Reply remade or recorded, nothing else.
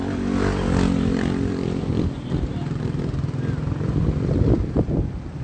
remade